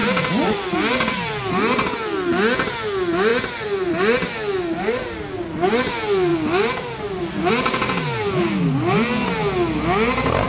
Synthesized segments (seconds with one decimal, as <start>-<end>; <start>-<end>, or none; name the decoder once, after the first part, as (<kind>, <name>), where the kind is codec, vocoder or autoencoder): 0.0-1.5 (vocoder, BigVGAN v2); 3.3-3.9